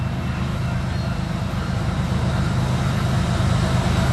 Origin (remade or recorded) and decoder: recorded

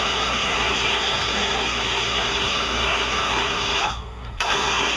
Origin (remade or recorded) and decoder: remade, codec, SNAC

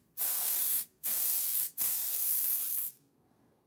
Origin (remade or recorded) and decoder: remade, codec, SNAC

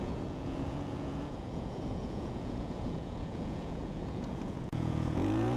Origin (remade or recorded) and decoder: remade, vocoder, Vocos